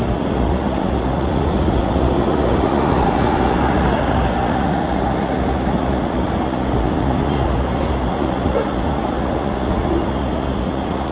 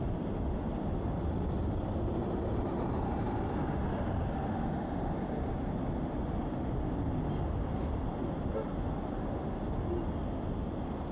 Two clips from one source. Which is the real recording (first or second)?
second